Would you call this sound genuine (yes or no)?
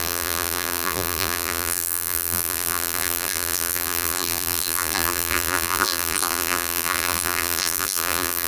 no